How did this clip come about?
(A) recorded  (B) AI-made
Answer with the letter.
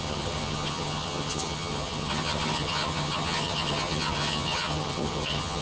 B